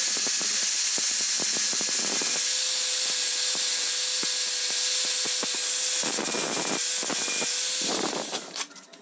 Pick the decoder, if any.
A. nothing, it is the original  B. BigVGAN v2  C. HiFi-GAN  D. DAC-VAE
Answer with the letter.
A